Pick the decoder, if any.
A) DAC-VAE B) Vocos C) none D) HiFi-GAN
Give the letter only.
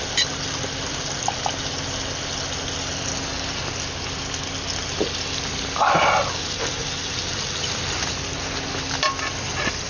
C